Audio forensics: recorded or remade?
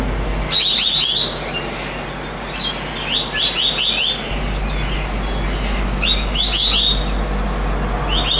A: recorded